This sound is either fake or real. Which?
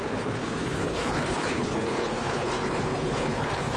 fake